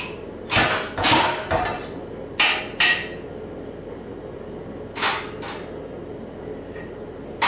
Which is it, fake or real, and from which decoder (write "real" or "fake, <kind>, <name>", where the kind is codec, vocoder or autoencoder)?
real